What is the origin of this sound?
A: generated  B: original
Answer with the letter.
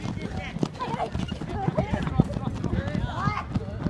B